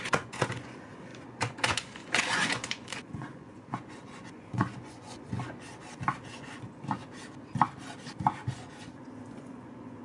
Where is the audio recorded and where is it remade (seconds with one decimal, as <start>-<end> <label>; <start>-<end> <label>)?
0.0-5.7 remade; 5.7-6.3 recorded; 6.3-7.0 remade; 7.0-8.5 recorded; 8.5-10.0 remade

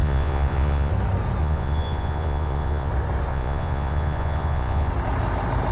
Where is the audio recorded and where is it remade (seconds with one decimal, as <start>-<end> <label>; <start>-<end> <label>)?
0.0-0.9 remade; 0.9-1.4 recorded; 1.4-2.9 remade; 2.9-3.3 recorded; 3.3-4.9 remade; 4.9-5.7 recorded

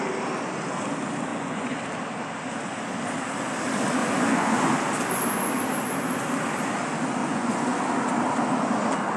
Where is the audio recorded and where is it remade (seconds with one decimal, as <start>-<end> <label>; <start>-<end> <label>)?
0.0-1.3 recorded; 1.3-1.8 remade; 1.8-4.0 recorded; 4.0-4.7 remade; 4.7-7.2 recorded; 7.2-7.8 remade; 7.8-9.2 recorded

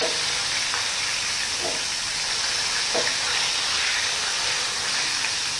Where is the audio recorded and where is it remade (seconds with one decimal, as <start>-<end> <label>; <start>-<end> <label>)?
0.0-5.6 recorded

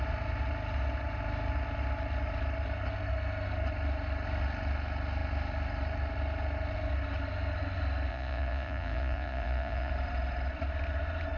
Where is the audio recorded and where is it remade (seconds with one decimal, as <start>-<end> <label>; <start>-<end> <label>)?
0.0-8.1 recorded; 8.1-9.9 remade; 9.9-11.4 recorded

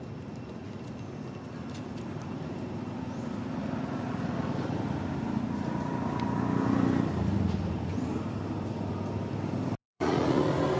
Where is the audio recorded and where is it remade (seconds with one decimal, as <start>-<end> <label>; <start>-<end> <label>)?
0.0-9.8 recorded; 9.8-10.4 remade; 10.4-10.8 recorded

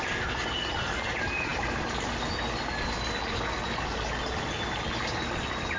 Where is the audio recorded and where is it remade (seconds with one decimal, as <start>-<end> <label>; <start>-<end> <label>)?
0.0-5.8 recorded